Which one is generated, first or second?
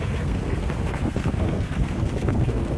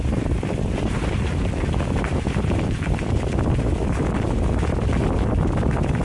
first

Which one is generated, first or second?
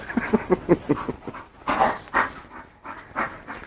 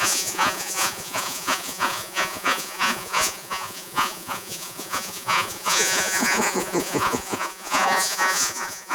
second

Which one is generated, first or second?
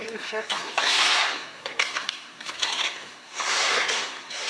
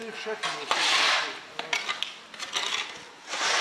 first